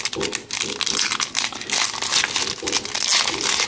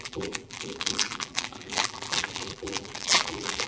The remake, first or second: second